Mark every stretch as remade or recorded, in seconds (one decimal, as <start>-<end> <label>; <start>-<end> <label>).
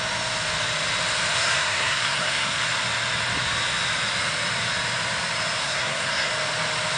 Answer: 0.0-1.3 recorded; 1.3-2.6 remade; 2.6-5.6 recorded; 5.6-6.3 remade; 6.3-7.0 recorded